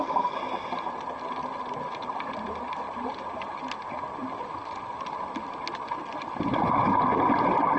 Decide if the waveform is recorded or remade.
recorded